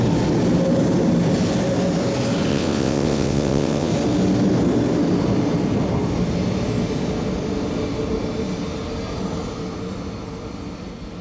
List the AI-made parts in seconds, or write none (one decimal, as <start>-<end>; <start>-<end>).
2.5-3.9